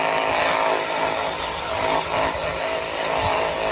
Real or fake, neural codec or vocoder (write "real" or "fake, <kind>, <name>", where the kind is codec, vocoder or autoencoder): real